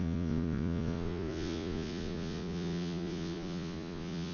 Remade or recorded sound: remade